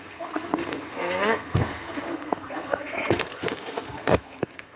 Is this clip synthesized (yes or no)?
yes